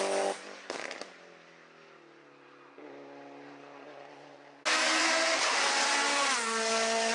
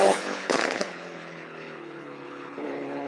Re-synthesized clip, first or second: second